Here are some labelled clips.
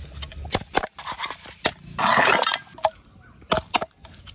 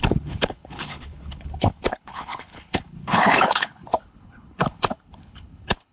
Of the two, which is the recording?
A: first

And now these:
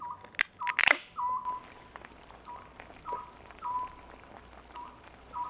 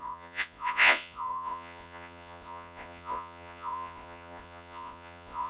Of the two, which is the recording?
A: first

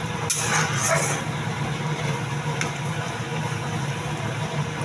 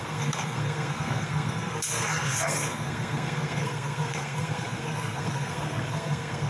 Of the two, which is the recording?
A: first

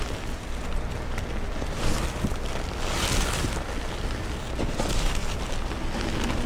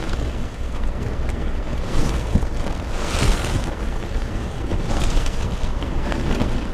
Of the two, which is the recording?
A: first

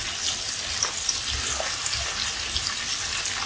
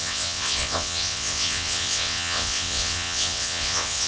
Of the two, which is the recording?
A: first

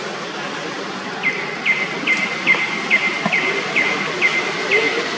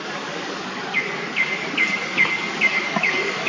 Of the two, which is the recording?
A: first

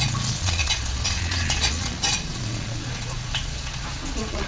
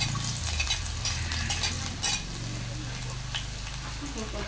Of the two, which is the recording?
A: second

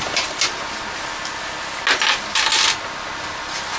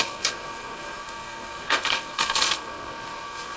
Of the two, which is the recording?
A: first